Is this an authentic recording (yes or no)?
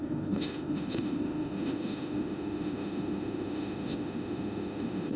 no